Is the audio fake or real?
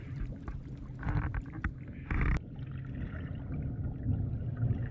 real